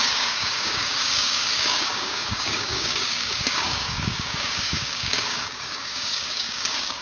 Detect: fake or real fake